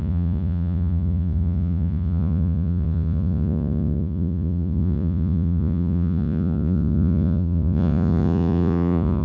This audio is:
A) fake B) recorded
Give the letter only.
A